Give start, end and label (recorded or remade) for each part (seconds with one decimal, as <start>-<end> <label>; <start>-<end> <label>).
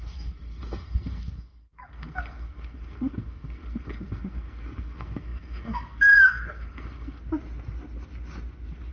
0.0-7.2 remade; 7.2-8.9 recorded